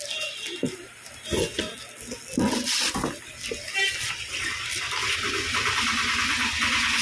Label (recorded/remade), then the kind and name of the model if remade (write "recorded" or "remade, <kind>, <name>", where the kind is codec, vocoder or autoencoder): recorded